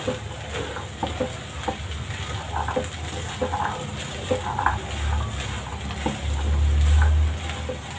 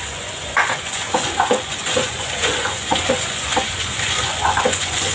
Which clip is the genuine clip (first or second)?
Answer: first